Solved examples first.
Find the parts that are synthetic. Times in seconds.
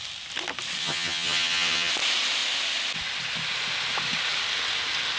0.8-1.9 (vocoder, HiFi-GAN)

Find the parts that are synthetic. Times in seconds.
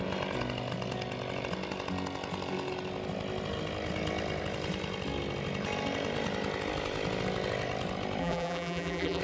8.2-9.2 (vocoder, BigVGAN v2)